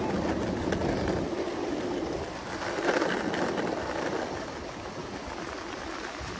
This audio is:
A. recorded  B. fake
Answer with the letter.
A